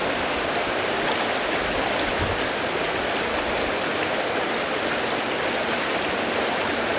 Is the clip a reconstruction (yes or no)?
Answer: no